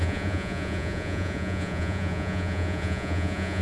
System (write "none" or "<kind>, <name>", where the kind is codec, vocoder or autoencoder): vocoder, Vocos